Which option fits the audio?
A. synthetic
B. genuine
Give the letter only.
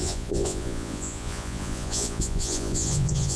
A